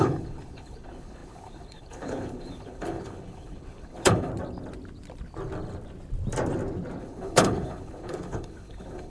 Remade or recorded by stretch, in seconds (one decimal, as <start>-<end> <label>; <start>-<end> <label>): 0.0-4.3 remade; 4.3-7.0 recorded; 7.0-9.1 remade